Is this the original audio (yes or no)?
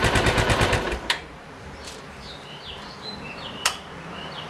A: no